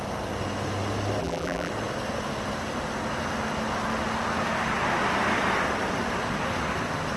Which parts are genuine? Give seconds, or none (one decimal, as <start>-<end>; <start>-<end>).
0.0-1.2; 1.7-7.2